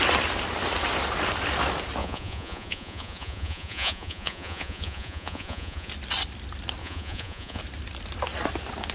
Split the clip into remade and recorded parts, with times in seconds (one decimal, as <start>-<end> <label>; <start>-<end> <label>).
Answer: 0.0-2.0 recorded; 2.0-5.9 remade; 5.9-6.8 recorded; 6.8-7.6 remade; 7.6-8.9 recorded